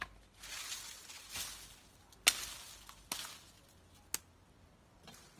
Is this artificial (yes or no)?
no